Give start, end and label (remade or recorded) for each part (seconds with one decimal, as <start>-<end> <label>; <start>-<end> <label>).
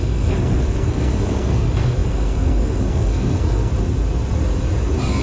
0.0-3.7 remade; 3.7-5.2 recorded